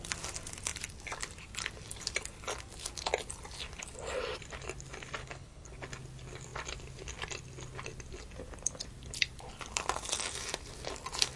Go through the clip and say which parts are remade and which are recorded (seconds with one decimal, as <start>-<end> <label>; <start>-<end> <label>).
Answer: 0.0-5.2 recorded; 5.2-5.8 remade; 5.8-11.4 recorded

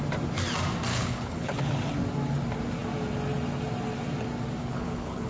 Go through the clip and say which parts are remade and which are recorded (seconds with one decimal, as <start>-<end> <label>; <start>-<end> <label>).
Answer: 0.0-0.9 recorded; 0.9-1.7 remade; 1.7-4.6 recorded; 4.6-5.3 remade

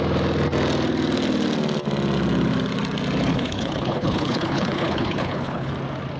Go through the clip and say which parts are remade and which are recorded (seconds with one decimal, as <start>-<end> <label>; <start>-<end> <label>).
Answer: 0.0-3.3 recorded; 3.3-5.7 remade; 5.7-6.2 recorded